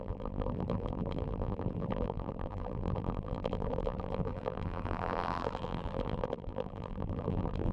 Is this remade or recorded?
remade